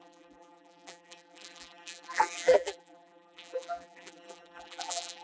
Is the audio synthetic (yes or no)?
yes